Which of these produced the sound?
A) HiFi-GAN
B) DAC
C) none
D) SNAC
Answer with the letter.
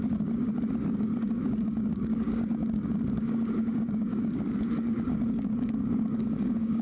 B